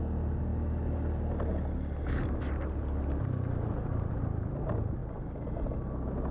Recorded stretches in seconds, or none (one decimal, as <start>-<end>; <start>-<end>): 0.0-6.3